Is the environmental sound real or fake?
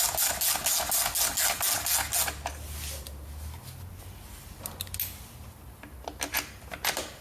real